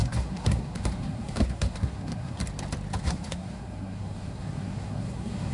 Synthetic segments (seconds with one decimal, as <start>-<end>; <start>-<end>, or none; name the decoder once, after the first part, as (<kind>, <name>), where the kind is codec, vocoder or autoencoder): 0.0-2.4 (codec, SNAC); 3.0-5.5